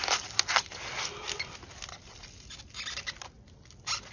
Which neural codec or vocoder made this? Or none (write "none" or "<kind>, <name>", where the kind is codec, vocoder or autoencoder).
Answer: none